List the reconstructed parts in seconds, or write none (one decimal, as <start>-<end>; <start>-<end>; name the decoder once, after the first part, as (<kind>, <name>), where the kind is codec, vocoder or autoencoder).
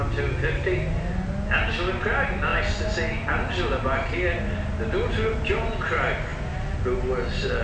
none